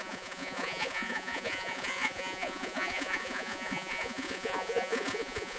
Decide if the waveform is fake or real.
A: fake